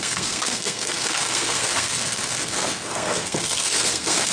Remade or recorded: remade